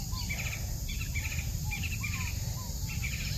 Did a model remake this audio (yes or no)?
no